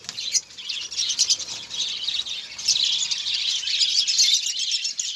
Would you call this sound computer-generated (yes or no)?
no